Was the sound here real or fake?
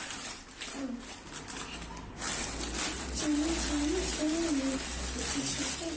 real